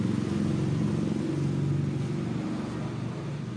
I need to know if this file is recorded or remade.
recorded